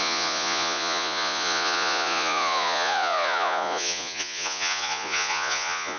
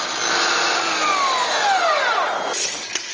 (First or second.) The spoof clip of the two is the first